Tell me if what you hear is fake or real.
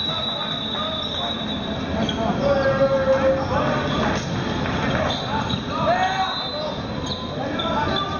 real